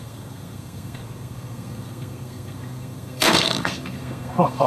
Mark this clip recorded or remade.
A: remade